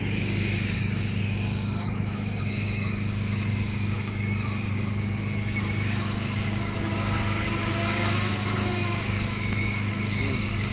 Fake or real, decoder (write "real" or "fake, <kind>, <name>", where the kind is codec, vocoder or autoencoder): fake, codec, DAC